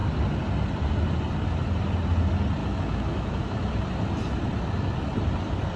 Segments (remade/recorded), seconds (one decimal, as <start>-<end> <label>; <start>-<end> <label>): 0.0-2.6 recorded; 2.6-3.7 remade; 3.7-5.8 recorded